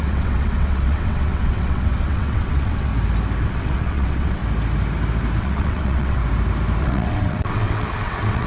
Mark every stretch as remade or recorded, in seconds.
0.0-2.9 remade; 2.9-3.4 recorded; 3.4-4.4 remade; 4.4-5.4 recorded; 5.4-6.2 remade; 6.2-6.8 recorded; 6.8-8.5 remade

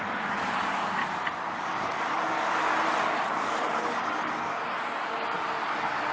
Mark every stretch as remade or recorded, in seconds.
0.0-1.0 remade; 1.0-1.5 recorded; 1.5-2.7 remade; 2.7-3.2 recorded; 3.2-6.1 remade

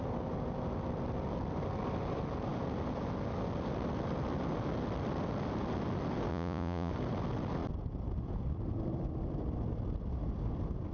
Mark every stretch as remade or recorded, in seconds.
0.0-6.3 recorded; 6.3-6.9 remade; 6.9-10.9 recorded